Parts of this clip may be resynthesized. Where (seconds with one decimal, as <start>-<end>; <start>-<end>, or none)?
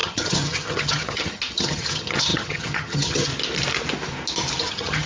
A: 0.0-3.3; 4.6-5.1